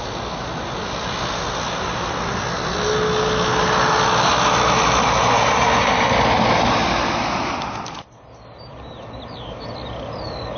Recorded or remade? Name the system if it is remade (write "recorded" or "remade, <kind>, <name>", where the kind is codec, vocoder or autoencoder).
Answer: recorded